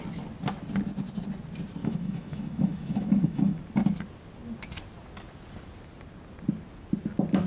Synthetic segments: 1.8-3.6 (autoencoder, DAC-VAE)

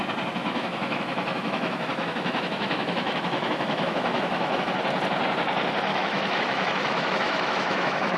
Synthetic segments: 0.4-4.7 (autoencoder, DAC-VAE); 5.9-8.2

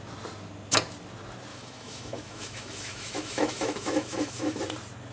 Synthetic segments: 1.5-4.6 (autoencoder, DAC-VAE)

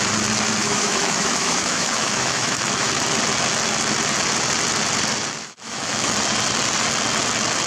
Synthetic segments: 0.6-2.9 (autoencoder, DAC-VAE); 5.4-6.1

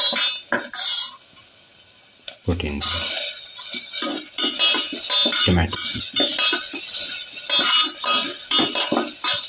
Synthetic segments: none

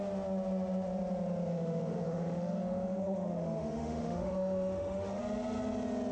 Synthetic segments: 1.5-5.2 (autoencoder, DAC-VAE)

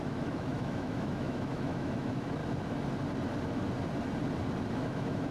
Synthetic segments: 0.0-2.4 (autoencoder, DAC-VAE); 4.7-5.3

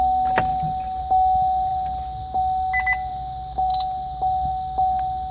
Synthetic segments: none